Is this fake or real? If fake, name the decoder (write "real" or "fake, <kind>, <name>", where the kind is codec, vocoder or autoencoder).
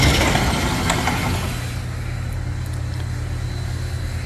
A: real